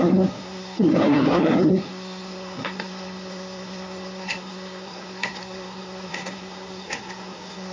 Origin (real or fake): fake